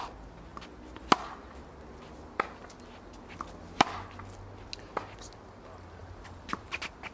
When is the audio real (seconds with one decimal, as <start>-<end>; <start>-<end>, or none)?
0.0-7.1